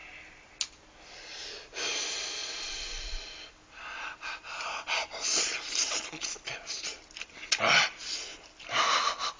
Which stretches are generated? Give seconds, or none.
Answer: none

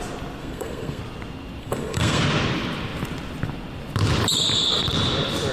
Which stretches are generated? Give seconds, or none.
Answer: 0.4-1.0 (codec, SNAC); 1.6-2.2